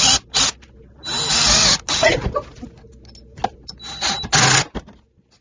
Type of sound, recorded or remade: recorded